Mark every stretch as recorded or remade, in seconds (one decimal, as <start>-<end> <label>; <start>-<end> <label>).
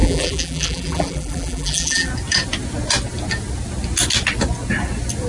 0.0-2.1 remade; 2.1-5.3 recorded